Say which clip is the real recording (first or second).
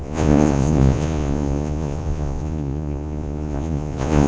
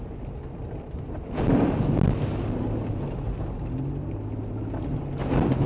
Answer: second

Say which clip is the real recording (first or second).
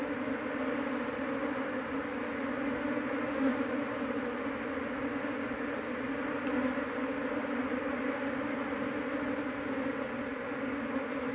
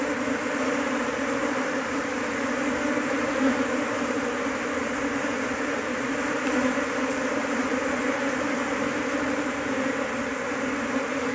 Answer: first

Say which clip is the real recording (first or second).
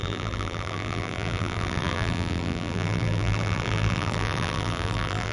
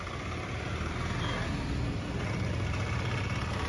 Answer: second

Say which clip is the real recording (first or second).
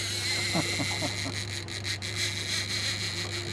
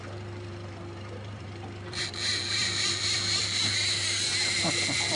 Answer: first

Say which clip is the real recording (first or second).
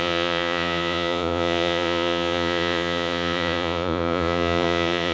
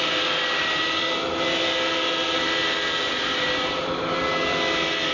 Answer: second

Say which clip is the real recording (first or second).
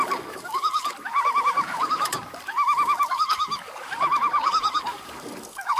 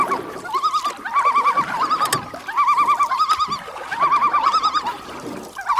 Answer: second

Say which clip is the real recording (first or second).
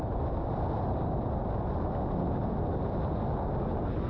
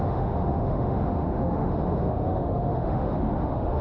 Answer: first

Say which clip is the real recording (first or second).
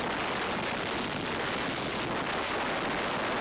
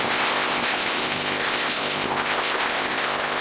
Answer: first